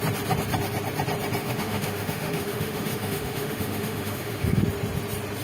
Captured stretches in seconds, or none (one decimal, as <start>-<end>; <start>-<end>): 0.0-1.4; 4.6-5.4